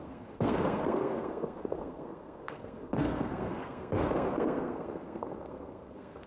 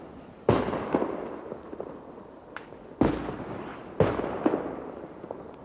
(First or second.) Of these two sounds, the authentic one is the second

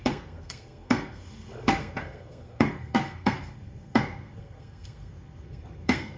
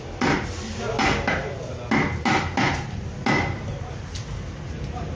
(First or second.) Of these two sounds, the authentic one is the second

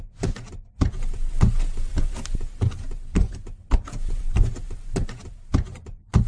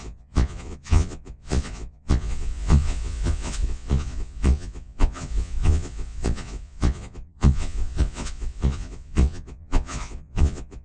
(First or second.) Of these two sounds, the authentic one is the first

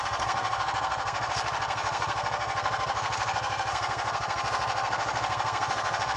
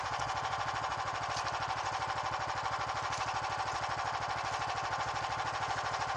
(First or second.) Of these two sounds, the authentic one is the second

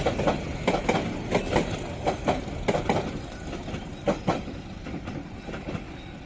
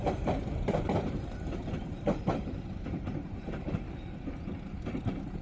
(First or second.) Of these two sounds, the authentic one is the first